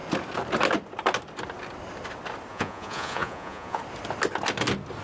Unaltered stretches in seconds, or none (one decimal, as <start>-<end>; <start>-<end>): 0.0-2.5; 3.8-5.0